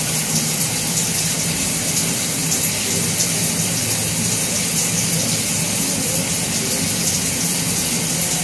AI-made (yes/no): no